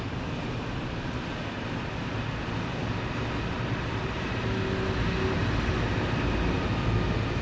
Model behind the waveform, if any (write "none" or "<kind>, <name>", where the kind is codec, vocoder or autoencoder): none